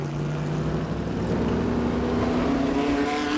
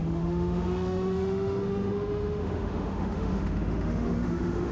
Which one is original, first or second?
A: first